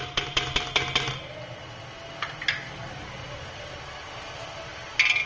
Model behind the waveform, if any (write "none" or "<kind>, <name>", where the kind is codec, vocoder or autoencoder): none